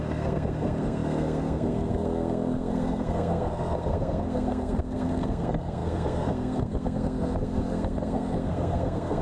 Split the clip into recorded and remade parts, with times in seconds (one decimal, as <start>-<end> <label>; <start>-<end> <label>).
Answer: 0.0-9.2 remade